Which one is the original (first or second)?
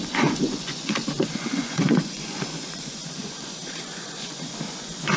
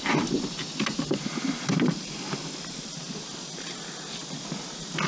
second